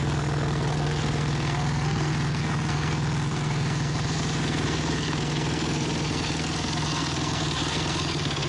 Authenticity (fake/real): fake